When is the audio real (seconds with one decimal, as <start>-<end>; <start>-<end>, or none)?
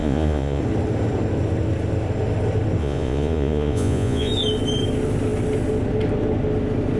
0.6-2.8; 4.3-7.0